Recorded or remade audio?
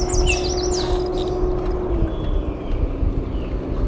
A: recorded